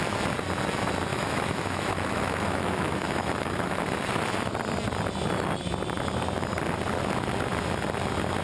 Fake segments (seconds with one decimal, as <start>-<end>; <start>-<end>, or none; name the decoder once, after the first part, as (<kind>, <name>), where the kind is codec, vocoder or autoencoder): 1.1-3.8 (autoencoder, DAC-VAE)